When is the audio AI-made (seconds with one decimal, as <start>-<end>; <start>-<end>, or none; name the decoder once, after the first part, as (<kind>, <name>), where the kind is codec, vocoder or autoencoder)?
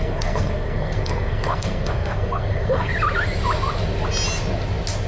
0.0-2.9 (codec, SNAC)